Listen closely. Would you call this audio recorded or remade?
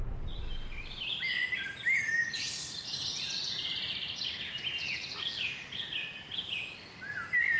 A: recorded